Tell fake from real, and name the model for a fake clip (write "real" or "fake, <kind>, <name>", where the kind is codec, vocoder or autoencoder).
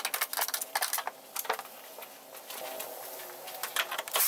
real